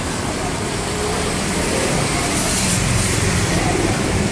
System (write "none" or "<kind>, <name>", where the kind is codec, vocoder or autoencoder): none